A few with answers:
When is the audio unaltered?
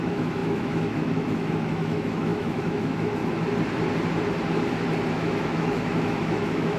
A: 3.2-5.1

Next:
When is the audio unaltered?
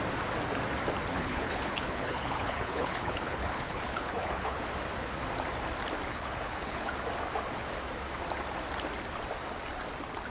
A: 0.0-1.1; 4.6-6.1; 6.9-10.3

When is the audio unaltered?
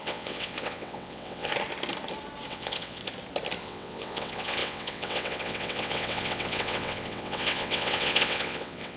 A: 1.5-2.5; 3.0-3.6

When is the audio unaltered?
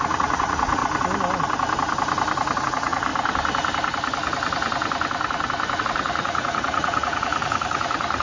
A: 0.8-2.6; 3.1-5.8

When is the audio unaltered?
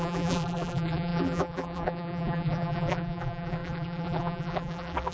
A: none